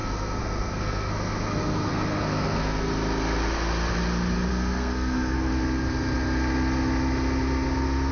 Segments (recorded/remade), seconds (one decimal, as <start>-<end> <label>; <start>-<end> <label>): 0.0-2.9 remade; 2.9-4.5 recorded; 4.5-5.5 remade; 5.5-8.1 recorded